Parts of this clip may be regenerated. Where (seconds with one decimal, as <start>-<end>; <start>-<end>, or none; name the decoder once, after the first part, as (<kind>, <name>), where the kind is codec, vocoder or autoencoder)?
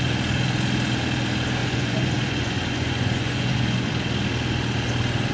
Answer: 1.6-3.9 (vocoder, Vocos)